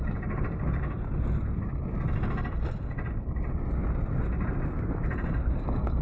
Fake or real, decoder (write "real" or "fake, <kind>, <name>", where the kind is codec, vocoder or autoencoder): real